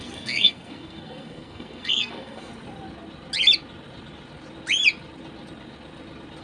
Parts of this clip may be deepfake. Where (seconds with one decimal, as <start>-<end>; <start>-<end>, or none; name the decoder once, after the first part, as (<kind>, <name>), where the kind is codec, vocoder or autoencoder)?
0.0-2.5 (codec, SNAC)